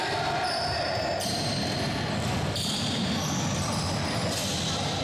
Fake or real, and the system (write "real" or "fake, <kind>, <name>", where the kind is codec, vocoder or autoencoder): real